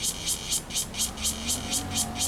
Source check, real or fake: real